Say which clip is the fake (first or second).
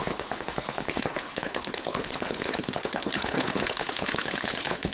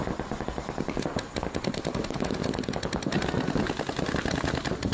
first